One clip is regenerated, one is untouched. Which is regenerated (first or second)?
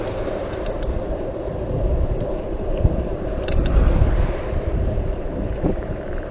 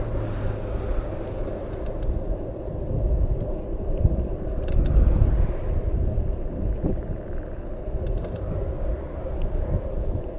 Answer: first